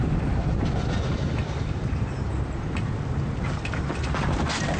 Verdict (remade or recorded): recorded